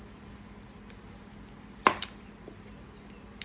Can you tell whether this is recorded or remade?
recorded